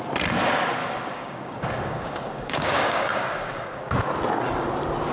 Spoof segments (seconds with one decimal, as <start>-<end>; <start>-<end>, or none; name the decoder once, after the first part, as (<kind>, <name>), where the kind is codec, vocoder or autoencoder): 0.8-3.9 (codec, DAC)